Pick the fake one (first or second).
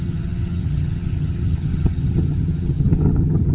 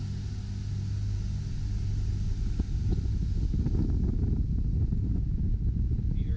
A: first